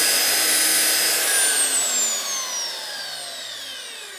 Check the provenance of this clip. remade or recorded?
recorded